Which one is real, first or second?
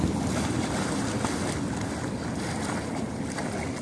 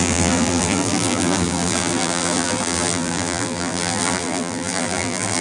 first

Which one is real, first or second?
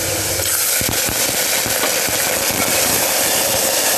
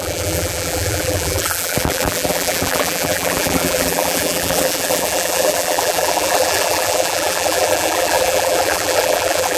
first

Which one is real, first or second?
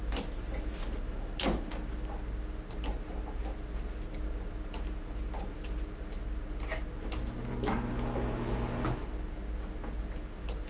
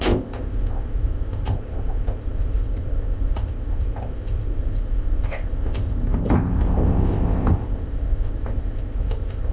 first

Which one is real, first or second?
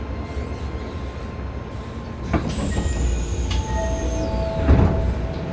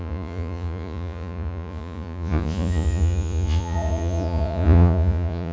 first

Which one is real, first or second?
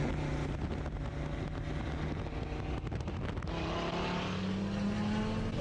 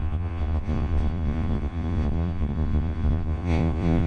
first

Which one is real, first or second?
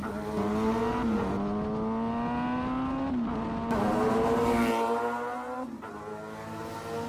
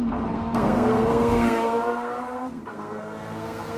first